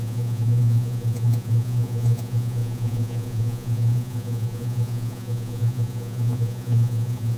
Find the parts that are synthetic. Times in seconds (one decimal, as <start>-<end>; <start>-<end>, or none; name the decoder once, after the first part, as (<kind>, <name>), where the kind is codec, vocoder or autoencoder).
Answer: 0.0-7.4 (vocoder, Vocos)